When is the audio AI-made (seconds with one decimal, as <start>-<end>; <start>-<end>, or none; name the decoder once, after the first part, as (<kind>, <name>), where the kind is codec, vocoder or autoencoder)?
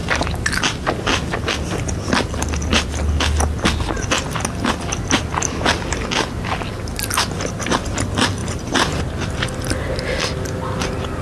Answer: 8.4-9.0 (vocoder, BigVGAN v2)